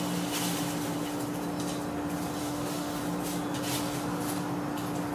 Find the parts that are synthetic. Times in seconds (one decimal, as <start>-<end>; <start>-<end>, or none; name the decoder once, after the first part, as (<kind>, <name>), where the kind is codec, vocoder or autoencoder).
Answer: 2.4-3.0 (autoencoder, DAC-VAE)

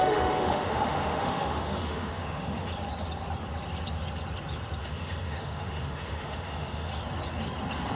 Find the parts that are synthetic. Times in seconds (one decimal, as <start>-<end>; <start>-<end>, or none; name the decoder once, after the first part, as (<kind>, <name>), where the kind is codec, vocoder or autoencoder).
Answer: 0.0-2.7 (autoencoder, DAC-VAE); 4.8-6.9